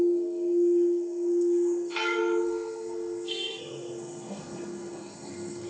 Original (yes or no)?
no